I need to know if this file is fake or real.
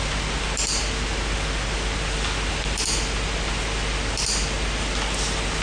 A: real